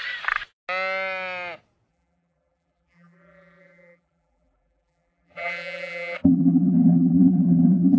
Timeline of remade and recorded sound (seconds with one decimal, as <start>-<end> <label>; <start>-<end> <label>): 0.0-1.9 recorded; 1.9-8.0 remade